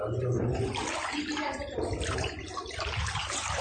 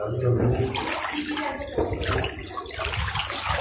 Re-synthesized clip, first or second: first